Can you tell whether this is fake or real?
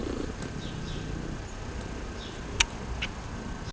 real